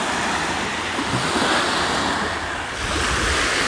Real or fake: real